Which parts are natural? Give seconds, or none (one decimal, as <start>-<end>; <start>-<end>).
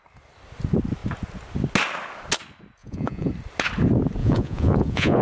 0.0-2.8; 3.3-4.2